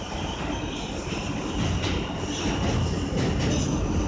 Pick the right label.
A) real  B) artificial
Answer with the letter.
A